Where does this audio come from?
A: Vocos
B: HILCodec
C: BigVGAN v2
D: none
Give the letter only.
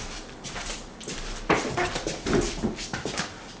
D